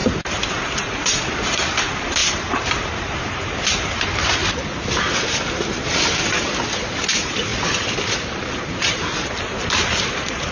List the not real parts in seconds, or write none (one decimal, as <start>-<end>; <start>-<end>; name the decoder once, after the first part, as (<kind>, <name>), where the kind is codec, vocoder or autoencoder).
0.0-4.4 (vocoder, BigVGAN v2); 7.1-7.5; 8.7-10.5